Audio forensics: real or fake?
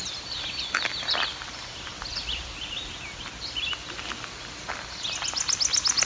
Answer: real